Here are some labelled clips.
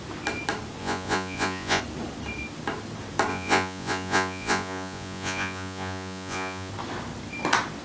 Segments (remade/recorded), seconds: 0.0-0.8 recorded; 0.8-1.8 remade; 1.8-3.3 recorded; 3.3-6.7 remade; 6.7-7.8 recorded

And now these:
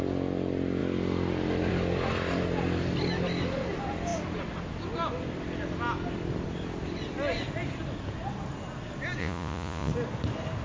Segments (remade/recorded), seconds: 0.0-9.2 recorded; 9.2-9.9 remade; 9.9-10.6 recorded

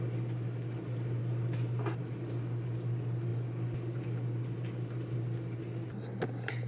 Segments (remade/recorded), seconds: 0.0-6.7 recorded

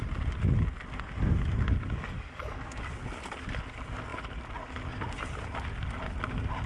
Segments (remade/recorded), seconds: 0.0-1.8 recorded; 1.8-3.0 remade; 3.0-6.7 recorded